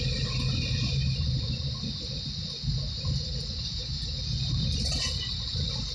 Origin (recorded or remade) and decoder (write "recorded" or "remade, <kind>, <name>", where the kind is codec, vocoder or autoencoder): recorded